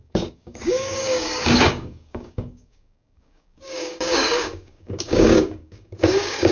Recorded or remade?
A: remade